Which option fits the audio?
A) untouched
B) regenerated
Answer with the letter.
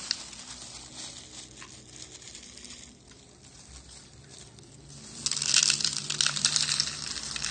A